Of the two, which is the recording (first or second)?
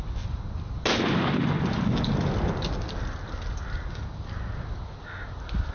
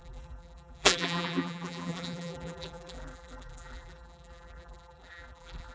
first